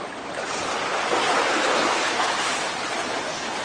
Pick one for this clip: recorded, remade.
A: recorded